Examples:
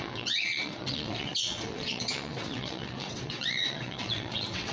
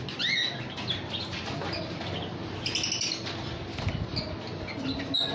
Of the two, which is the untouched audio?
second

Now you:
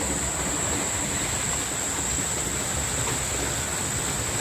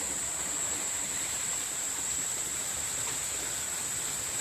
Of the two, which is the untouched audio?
first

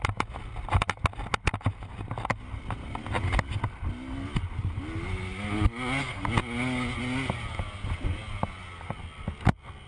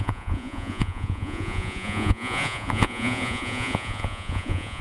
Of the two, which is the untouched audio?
first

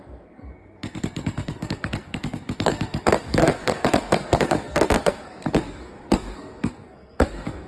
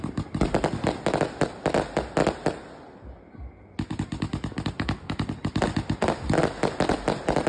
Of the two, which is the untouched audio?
second